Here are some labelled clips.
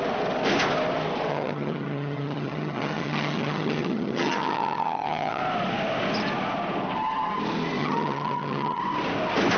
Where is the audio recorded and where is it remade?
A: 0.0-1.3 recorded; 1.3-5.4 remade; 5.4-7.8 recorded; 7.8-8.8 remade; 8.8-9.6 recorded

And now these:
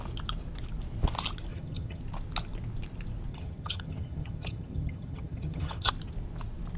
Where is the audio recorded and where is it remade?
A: 0.0-1.5 recorded; 1.5-2.0 remade; 2.0-3.3 recorded; 3.3-5.9 remade; 5.9-6.8 recorded

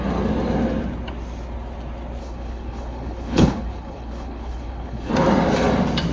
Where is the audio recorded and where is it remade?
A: 0.0-2.2 recorded; 2.2-5.1 remade; 5.1-6.1 recorded

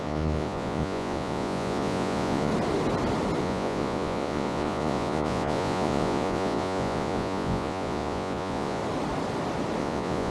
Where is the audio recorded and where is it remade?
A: 0.0-2.5 remade; 2.5-3.4 recorded; 3.4-8.8 remade; 8.8-9.8 recorded; 9.8-10.3 remade

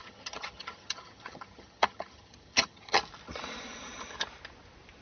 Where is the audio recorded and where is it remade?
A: 0.0-3.0 remade; 3.0-5.0 recorded

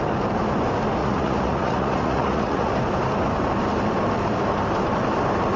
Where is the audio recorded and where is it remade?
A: 0.0-1.0 recorded; 1.0-2.7 remade; 2.7-5.6 recorded